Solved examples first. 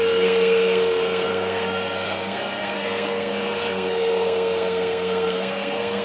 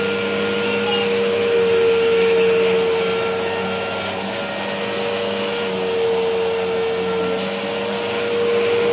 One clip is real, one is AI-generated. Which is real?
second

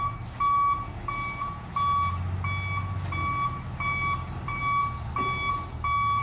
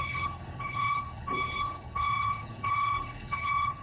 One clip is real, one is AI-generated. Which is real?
first